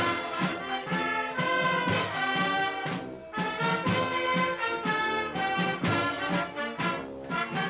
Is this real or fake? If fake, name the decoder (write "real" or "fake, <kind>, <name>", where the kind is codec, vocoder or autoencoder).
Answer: real